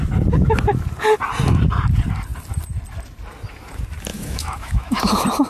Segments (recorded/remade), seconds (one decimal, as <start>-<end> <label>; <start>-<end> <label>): 0.0-4.1 recorded; 4.1-5.1 remade; 5.1-5.5 recorded